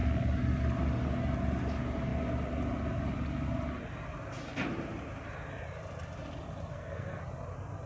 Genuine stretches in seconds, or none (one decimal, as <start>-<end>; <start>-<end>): 0.0-6.7; 7.2-7.9